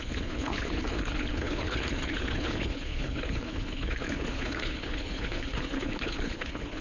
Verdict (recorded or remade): remade